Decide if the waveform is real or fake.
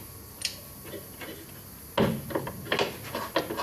real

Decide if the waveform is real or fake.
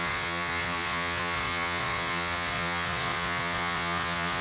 fake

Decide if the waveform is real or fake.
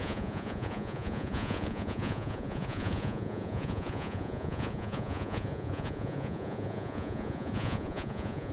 fake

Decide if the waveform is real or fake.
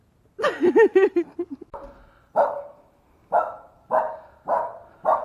real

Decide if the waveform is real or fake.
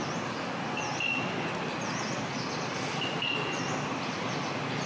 real